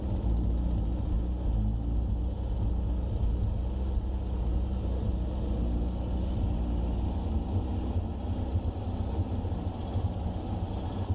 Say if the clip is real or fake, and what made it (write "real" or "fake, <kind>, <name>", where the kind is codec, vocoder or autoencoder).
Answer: real